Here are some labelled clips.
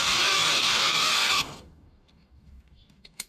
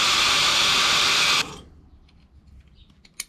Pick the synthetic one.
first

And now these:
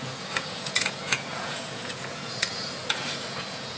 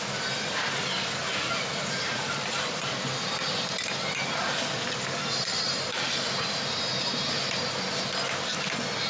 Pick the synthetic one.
first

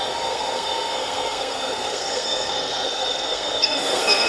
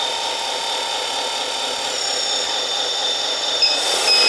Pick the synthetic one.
first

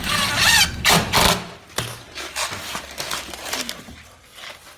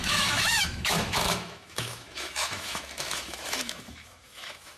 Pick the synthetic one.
second